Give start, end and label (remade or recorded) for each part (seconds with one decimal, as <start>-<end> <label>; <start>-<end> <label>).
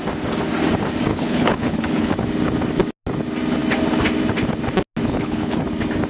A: 0.0-1.1 recorded; 1.1-2.1 remade; 2.1-5.0 recorded; 5.0-5.6 remade; 5.6-6.1 recorded